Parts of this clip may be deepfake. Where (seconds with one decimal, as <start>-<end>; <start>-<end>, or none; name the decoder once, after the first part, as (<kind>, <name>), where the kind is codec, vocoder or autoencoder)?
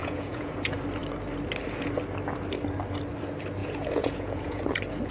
0.0-0.5 (vocoder, Vocos); 3.6-4.6